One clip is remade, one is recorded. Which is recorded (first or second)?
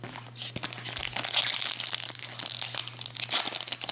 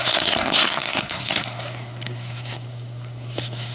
first